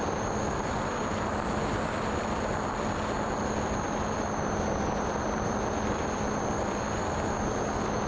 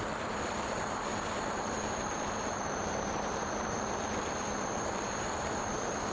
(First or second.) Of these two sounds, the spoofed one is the second